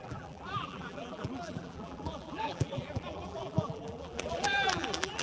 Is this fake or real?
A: fake